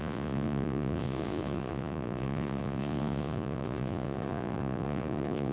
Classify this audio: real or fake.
fake